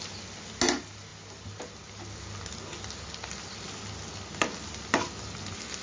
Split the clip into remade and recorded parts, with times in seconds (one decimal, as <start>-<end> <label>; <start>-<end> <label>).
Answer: 0.0-5.8 recorded